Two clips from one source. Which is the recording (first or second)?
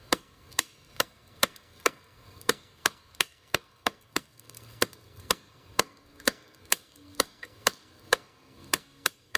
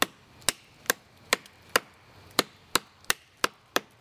second